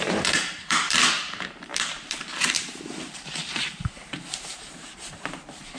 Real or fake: fake